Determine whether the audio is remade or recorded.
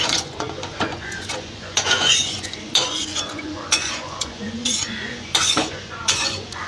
remade